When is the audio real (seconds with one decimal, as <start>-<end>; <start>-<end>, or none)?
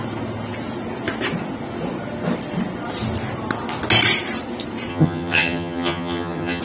0.0-4.9